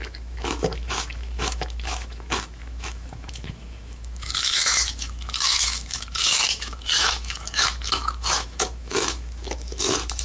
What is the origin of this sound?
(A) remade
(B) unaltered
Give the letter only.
A